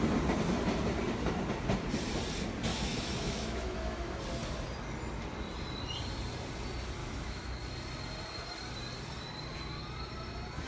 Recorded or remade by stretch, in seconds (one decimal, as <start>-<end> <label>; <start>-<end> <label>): 0.0-2.7 recorded; 2.7-4.2 remade; 4.2-7.0 recorded; 7.0-7.6 remade; 7.6-10.7 recorded